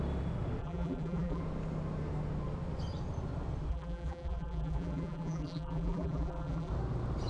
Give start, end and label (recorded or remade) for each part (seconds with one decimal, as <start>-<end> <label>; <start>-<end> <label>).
0.0-0.6 recorded; 0.6-1.4 remade; 1.4-3.7 recorded; 3.7-6.7 remade; 6.7-7.3 recorded